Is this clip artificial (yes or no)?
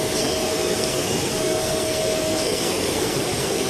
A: yes